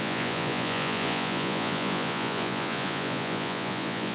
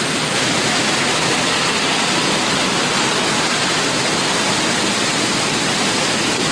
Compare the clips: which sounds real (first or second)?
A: second